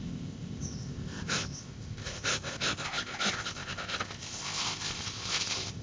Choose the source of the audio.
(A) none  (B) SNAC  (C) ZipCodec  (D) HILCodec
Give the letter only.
C